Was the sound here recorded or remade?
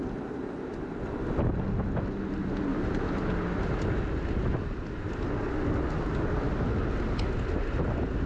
recorded